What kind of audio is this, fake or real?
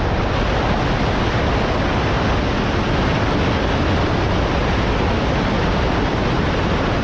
real